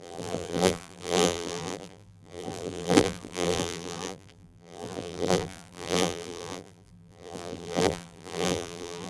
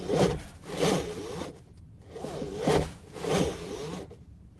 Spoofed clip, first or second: first